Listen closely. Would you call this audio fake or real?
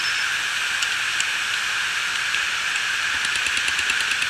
fake